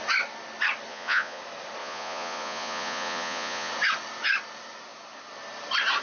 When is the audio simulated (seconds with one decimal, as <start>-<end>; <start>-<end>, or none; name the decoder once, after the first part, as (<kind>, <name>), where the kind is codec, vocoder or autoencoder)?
0.9-1.4 (vocoder, Vocos); 1.8-3.7